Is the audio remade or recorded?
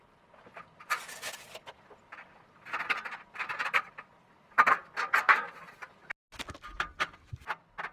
recorded